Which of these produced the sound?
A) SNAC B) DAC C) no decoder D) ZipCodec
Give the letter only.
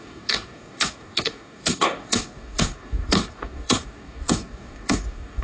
B